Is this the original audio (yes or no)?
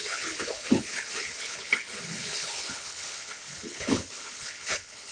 no